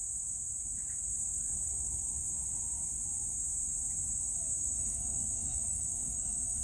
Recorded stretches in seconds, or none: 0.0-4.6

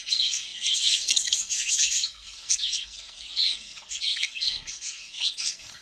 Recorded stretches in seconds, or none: none

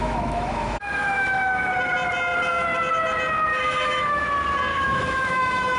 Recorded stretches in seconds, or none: 1.7-3.5; 4.3-4.7

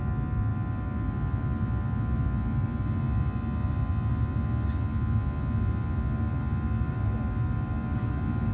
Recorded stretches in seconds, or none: 0.0-8.5

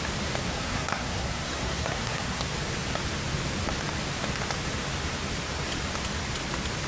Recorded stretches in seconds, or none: 0.0-0.4; 2.4-6.9